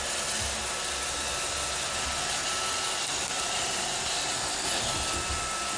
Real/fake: real